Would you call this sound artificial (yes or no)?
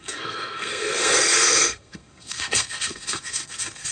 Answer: yes